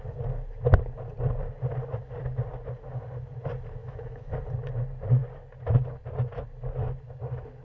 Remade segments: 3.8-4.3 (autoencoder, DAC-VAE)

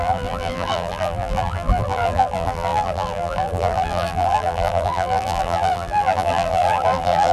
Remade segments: 0.0-7.3 (vocoder, BigVGAN v2)

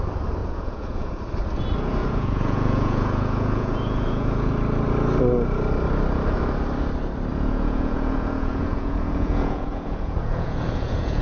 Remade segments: 0.4-1.2 (vocoder, Vocos); 2.0-4.5; 7.3-11.2